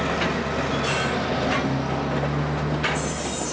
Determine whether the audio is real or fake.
real